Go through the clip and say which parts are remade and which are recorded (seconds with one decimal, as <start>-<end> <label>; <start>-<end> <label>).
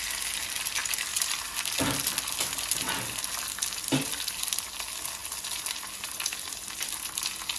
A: 0.0-7.6 recorded